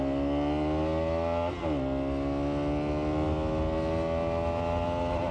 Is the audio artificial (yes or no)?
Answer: no